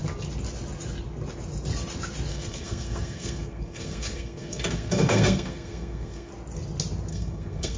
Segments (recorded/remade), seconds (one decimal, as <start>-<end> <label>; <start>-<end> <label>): 0.0-2.3 recorded; 2.3-6.3 remade; 6.3-7.1 recorded; 7.1-7.8 remade